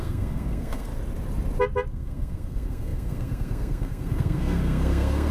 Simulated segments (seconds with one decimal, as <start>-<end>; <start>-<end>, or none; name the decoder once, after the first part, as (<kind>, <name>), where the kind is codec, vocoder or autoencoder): 0.0-0.9 (codec, SNAC); 1.9-5.3